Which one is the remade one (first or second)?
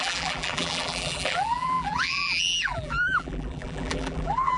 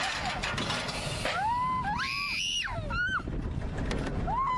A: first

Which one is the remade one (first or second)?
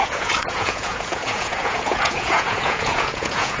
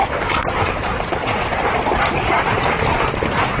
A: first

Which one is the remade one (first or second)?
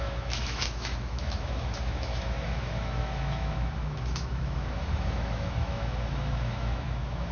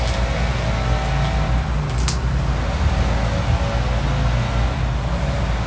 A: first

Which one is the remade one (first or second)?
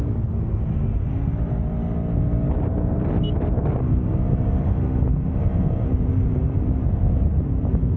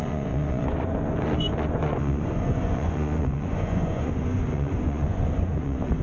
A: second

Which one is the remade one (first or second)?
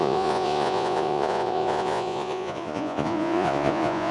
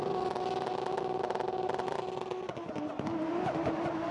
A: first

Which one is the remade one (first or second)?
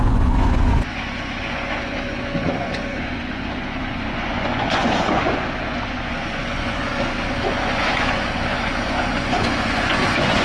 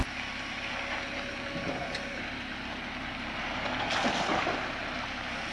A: first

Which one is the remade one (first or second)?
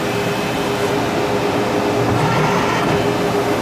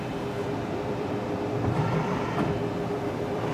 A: second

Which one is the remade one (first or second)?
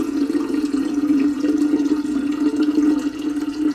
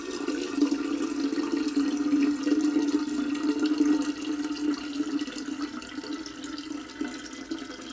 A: first